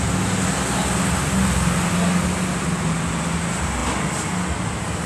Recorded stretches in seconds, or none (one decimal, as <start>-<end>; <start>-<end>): 0.0-5.1